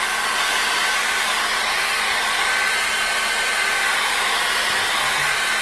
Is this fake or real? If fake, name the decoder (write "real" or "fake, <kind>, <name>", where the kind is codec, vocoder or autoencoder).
real